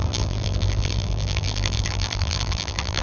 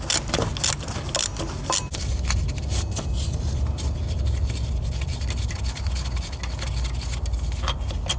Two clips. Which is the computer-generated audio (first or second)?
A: first